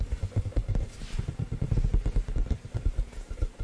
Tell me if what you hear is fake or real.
fake